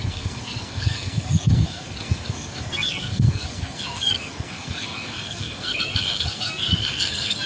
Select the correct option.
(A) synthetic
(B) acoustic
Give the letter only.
A